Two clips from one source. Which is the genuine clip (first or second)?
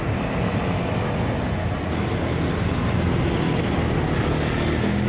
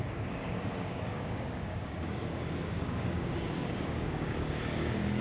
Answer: first